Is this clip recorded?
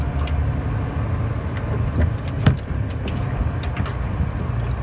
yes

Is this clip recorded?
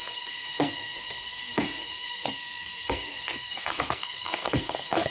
no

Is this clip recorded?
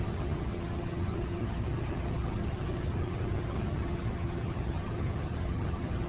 no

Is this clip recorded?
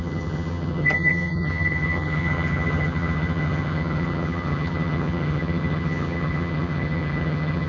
no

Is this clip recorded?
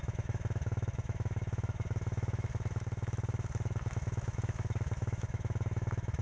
no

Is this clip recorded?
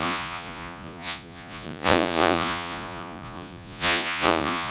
no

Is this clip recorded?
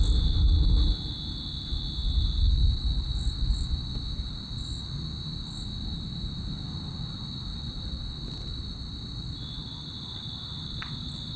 yes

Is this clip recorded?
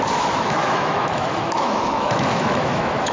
no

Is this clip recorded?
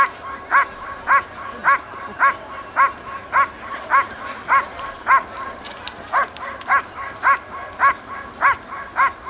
yes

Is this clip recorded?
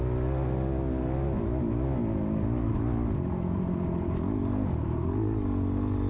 yes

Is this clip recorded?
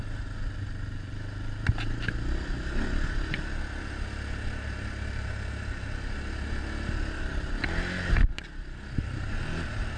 yes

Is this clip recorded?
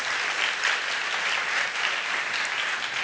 yes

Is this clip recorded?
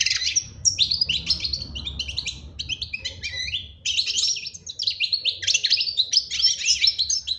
yes